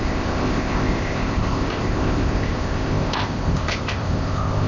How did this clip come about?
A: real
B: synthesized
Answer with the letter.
B